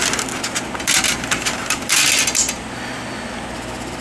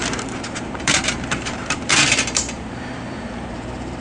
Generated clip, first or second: second